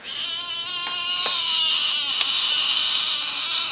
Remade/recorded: recorded